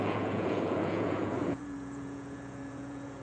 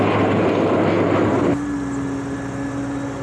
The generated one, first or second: first